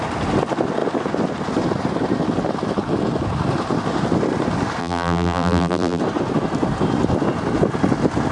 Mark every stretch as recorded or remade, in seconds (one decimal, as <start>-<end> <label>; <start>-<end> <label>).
0.0-4.8 recorded; 4.8-6.0 remade; 6.0-8.3 recorded

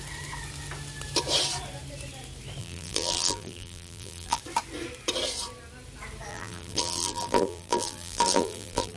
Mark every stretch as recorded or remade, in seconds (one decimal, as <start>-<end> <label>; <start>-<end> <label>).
0.0-2.6 recorded; 2.6-4.4 remade; 4.4-6.3 recorded; 6.3-9.0 remade

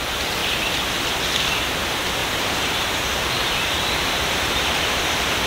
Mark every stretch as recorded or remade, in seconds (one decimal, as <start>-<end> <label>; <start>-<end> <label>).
0.0-2.2 recorded; 2.2-5.1 remade; 5.1-5.5 recorded

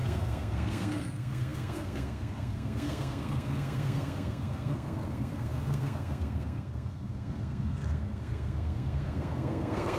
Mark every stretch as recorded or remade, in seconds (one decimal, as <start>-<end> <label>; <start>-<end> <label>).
0.0-10.0 remade

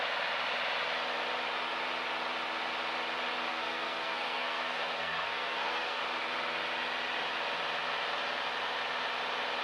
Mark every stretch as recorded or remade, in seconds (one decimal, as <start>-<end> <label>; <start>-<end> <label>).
0.0-3.5 recorded; 3.5-6.0 remade; 6.0-9.6 recorded

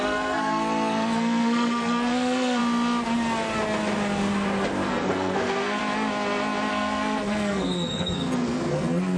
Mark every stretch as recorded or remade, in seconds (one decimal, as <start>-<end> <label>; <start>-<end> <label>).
0.0-2.6 remade; 2.6-4.9 recorded; 4.9-5.8 remade; 5.8-6.7 recorded; 6.7-9.2 remade

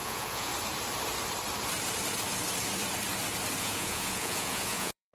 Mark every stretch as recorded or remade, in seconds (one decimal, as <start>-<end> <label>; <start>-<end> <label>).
0.0-0.5 remade; 0.5-3.6 recorded; 3.6-5.1 remade